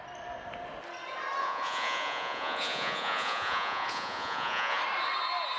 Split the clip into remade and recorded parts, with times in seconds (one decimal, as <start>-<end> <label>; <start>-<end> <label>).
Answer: 0.0-1.4 recorded; 1.4-4.8 remade; 4.8-5.6 recorded